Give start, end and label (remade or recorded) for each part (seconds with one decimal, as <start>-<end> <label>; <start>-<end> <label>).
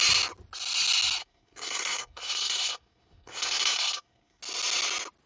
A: 0.0-1.2 recorded; 1.2-4.4 remade; 4.4-5.3 recorded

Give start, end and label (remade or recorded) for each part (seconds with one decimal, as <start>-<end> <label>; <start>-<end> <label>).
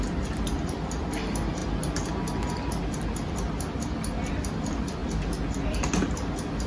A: 0.0-1.6 remade; 1.6-4.3 recorded; 4.3-5.0 remade; 5.0-5.7 recorded; 5.7-6.7 remade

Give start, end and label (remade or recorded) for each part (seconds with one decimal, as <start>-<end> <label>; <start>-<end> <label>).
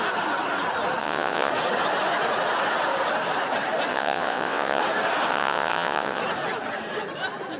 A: 0.0-1.0 recorded; 1.0-1.5 remade; 1.5-3.9 recorded; 3.9-4.8 remade; 4.8-5.3 recorded; 5.3-6.2 remade; 6.2-7.6 recorded